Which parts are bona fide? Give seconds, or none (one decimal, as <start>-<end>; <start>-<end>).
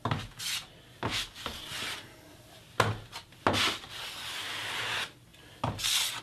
0.0-6.2